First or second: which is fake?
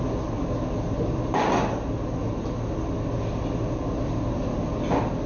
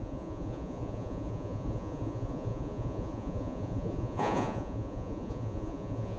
second